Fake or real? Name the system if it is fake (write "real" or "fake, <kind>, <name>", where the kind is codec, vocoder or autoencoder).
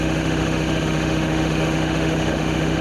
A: fake, autoencoder, DAC-VAE